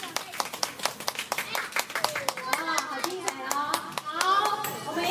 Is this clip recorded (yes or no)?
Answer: yes